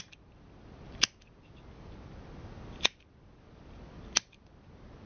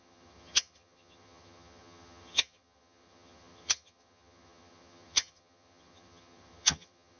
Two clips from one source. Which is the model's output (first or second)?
second